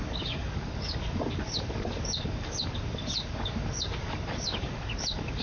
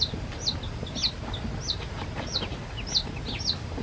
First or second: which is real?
second